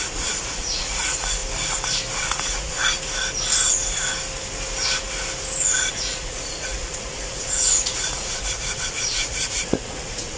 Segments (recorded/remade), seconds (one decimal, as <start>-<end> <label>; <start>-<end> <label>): 0.0-1.4 remade; 1.4-2.2 recorded; 2.2-2.8 remade; 2.8-5.9 recorded; 5.9-10.4 remade